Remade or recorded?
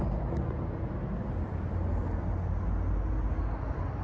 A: recorded